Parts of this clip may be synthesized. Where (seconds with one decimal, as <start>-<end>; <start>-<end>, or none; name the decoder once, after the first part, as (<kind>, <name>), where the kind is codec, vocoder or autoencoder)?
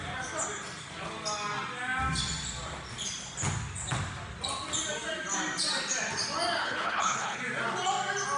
6.6-7.4 (codec, HILCodec)